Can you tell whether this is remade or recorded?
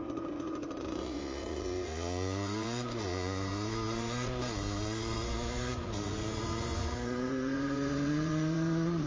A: remade